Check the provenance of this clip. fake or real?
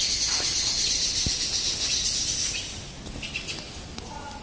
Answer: real